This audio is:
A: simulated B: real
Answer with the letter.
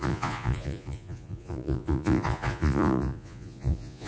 A